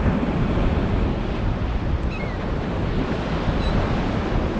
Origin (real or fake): real